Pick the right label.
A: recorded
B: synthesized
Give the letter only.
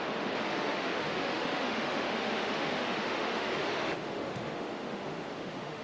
B